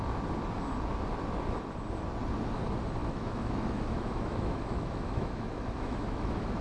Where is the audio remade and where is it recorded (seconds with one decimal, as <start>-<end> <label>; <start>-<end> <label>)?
0.0-3.0 recorded; 3.0-6.6 remade